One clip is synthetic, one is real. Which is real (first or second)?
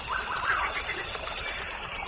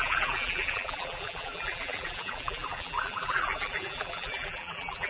first